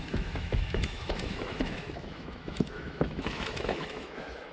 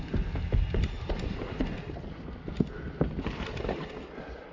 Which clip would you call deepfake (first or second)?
first